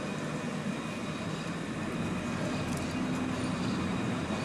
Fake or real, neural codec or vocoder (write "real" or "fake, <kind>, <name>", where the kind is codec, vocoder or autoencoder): real